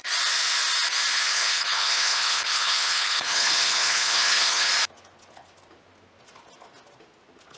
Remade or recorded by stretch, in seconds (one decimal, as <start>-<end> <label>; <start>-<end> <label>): 0.0-1.1 recorded; 1.1-4.7 remade; 4.7-7.6 recorded